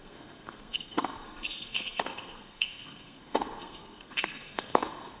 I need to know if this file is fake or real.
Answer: fake